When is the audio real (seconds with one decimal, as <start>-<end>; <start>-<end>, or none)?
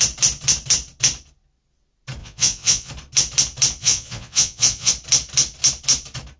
0.0-2.2; 2.9-3.8; 4.9-6.4